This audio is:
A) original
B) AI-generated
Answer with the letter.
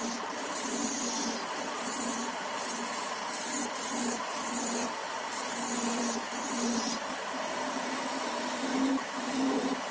B